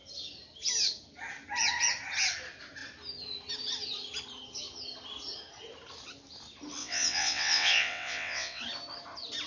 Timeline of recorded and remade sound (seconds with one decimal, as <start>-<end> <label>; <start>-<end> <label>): 0.0-6.8 recorded; 6.8-8.6 remade; 8.6-9.5 recorded